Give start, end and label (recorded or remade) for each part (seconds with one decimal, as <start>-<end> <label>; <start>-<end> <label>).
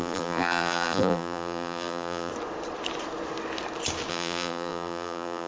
0.0-2.3 remade; 2.3-4.1 recorded; 4.1-5.5 remade